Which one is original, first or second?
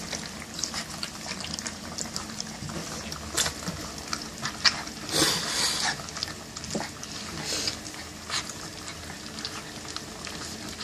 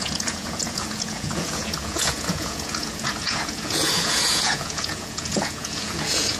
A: first